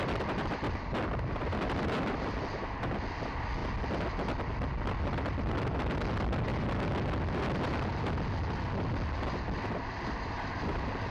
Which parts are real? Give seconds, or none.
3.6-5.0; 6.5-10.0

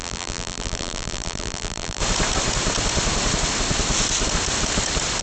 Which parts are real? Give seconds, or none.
2.0-5.2

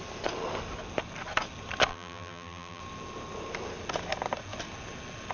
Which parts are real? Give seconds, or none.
0.0-1.9; 2.8-5.3

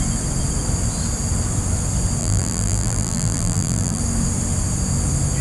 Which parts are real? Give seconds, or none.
0.0-2.2; 4.0-5.4

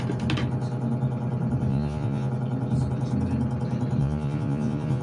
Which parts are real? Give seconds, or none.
0.0-1.7; 2.3-4.0